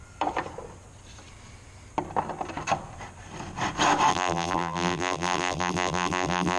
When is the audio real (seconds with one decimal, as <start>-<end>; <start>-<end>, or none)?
0.0-4.1